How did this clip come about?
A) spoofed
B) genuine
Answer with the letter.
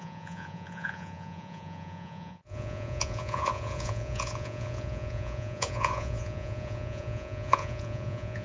A